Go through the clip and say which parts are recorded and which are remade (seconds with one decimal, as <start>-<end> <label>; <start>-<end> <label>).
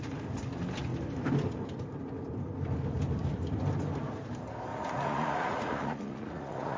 0.0-4.7 recorded; 4.7-6.8 remade